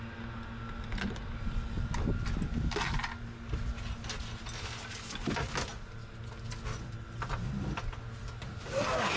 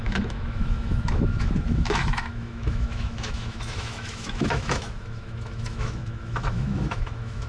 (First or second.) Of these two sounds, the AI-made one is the second